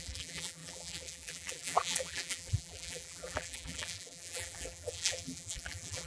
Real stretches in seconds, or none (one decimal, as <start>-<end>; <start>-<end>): none